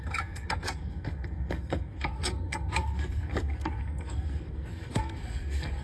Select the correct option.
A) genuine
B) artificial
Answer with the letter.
B